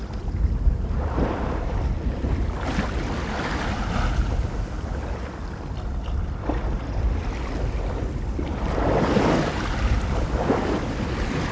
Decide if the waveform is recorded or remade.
recorded